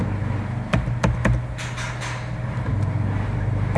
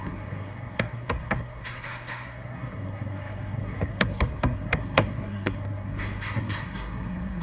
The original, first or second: first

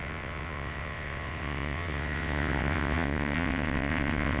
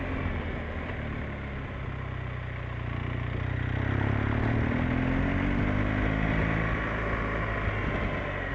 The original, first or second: second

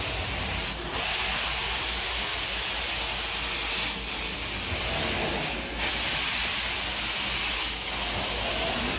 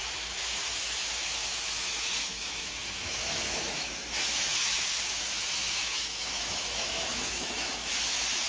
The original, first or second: first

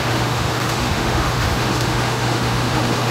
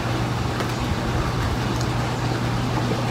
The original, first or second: second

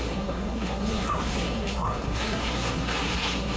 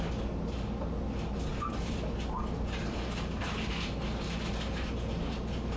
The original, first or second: second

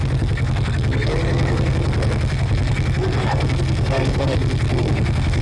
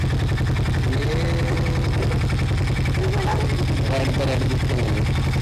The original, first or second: second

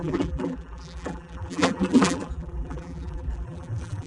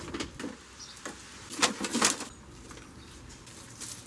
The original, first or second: second